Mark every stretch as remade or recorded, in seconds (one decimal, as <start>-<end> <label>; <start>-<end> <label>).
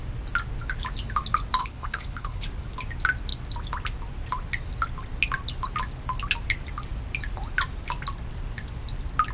0.0-1.6 recorded; 1.6-2.4 remade; 2.4-9.3 recorded